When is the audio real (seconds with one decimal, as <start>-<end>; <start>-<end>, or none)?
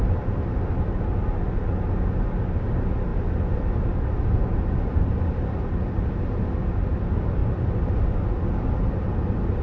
0.0-3.1; 6.6-7.4; 8.3-9.6